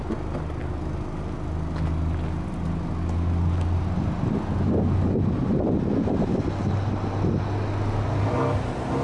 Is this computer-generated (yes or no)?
no